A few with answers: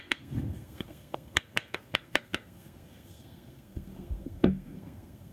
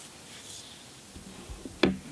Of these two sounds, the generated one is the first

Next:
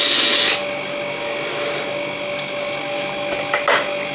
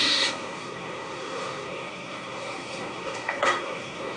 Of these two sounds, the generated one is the second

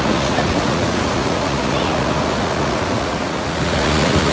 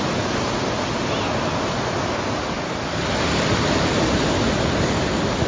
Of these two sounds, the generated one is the first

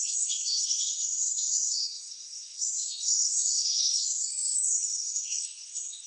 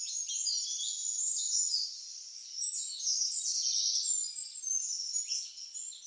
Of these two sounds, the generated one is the first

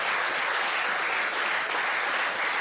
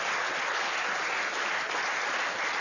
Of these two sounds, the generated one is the second